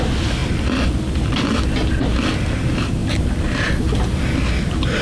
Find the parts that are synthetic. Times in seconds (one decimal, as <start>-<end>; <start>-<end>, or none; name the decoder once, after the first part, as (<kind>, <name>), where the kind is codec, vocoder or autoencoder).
none